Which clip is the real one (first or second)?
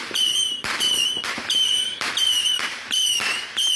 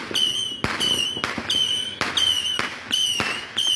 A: second